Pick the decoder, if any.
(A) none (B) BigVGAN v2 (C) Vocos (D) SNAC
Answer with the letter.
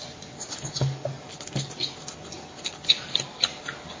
A